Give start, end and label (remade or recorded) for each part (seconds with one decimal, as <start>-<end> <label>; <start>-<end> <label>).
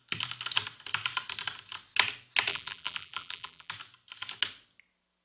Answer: 0.0-2.5 recorded; 2.5-3.7 remade; 3.7-5.2 recorded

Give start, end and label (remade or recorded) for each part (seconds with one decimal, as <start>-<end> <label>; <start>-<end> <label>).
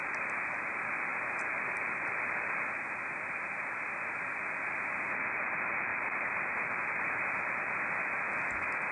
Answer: 0.0-8.9 recorded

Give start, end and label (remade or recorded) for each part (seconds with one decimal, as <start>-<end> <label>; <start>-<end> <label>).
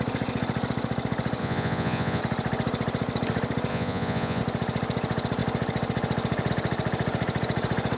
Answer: 0.0-1.4 recorded; 1.4-2.2 remade; 2.2-3.7 recorded; 3.7-4.4 remade; 4.4-8.0 recorded